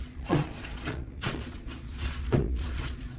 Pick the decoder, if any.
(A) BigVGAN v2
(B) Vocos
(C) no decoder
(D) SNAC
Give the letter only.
B